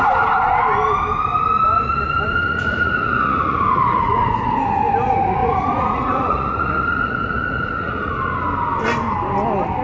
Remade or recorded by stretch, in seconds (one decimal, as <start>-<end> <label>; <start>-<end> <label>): 0.0-2.4 recorded; 2.4-4.6 remade; 4.6-5.4 recorded; 5.4-8.1 remade; 8.1-9.8 recorded